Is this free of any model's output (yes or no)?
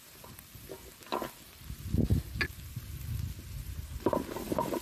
yes